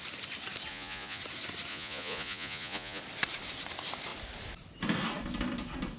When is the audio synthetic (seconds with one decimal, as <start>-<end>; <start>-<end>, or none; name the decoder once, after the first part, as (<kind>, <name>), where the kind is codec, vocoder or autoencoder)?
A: 0.7-1.2 (vocoder, Vocos); 1.7-3.0